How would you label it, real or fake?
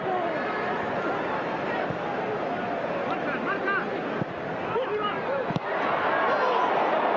real